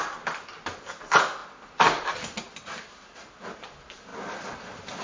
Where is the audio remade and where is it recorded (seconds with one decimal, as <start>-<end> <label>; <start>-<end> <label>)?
0.0-1.4 recorded; 1.4-2.3 remade; 2.3-5.0 recorded

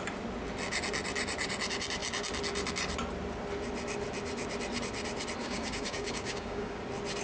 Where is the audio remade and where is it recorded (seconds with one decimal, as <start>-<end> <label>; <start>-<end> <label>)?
0.0-5.4 recorded; 5.4-6.8 remade; 6.8-7.2 recorded